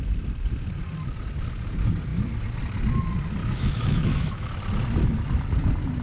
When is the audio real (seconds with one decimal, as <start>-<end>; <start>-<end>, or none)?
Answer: 0.0-3.4; 4.5-6.0